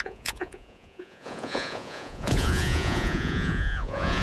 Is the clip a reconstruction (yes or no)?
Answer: yes